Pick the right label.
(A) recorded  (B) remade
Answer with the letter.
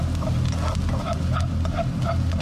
A